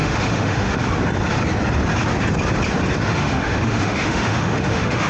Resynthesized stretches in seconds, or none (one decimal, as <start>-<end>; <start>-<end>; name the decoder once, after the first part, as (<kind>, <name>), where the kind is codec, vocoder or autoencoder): 0.0-0.8 (autoencoder, DAC-VAE); 3.0-5.1